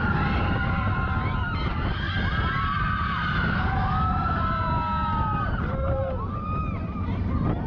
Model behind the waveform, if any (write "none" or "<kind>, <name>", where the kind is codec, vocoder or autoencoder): none